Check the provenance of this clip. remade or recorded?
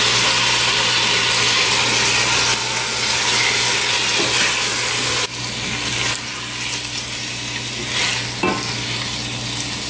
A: recorded